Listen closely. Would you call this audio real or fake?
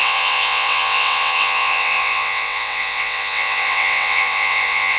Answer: fake